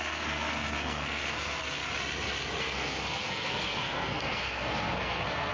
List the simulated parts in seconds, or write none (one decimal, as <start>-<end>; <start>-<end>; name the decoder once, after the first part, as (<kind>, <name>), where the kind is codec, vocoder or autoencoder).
0.0-1.8 (codec, SNAC); 2.6-5.5